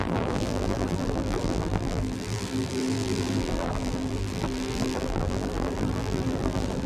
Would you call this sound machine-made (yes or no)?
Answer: yes